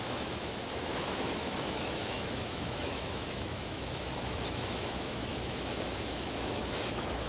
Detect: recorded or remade remade